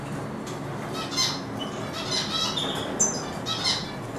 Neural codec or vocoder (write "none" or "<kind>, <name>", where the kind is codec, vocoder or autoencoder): none